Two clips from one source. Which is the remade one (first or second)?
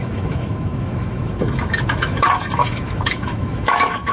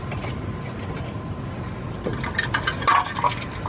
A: first